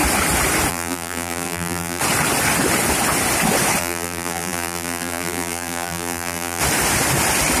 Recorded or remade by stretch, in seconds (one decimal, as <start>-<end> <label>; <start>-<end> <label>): 0.0-0.7 recorded; 0.7-2.0 remade; 2.0-3.8 recorded; 3.8-6.6 remade; 6.6-7.6 recorded

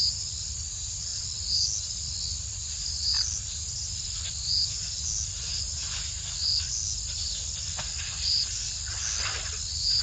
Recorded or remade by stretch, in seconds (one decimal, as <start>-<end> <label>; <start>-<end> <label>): 0.0-10.0 recorded

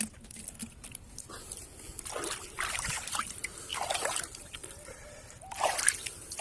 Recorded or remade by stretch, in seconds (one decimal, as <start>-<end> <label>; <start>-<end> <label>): 0.0-6.4 recorded

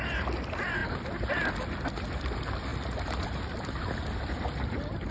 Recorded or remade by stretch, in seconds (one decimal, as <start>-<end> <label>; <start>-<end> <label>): 0.0-0.8 recorded; 0.8-1.3 remade; 1.3-2.7 recorded; 2.7-3.8 remade; 3.8-5.1 recorded

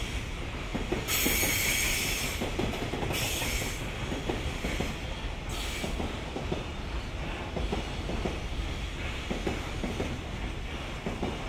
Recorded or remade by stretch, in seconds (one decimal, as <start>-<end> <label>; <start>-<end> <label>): 0.0-11.5 recorded

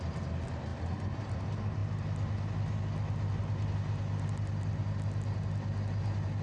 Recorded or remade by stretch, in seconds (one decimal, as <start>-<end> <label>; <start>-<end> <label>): 0.0-0.7 recorded; 0.7-1.4 remade; 1.4-6.4 recorded

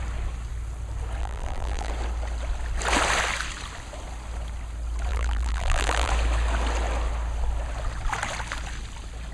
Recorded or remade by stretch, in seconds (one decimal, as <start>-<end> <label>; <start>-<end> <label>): 0.0-1.2 recorded; 1.2-1.9 remade; 1.9-5.1 recorded; 5.1-6.1 remade; 6.1-9.3 recorded